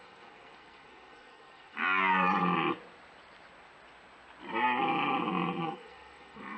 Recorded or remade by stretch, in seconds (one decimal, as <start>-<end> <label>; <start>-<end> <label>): 0.0-1.8 remade; 1.8-5.6 recorded; 5.6-6.6 remade